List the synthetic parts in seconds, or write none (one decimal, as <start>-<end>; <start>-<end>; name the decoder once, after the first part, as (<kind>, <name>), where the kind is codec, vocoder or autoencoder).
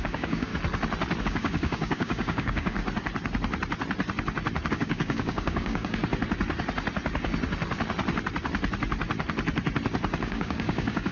0.0-0.5 (codec, DAC); 1.2-2.8; 4.7-6.0; 10.2-11.1